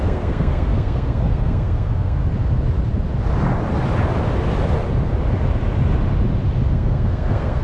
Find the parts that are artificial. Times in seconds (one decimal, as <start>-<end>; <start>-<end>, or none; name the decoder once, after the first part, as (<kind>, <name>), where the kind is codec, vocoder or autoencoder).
0.0-2.2 (codec, SNAC); 6.7-7.6